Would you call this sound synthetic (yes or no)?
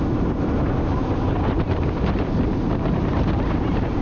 yes